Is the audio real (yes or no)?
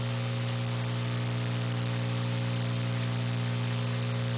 yes